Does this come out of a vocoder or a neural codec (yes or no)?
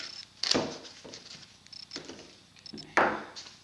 no